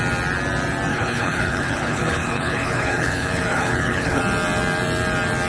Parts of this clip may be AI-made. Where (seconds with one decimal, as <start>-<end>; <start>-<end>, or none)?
0.9-4.2